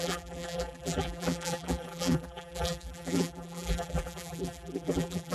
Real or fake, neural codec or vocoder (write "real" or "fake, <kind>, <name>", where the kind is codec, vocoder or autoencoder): fake, vocoder, BigVGAN v2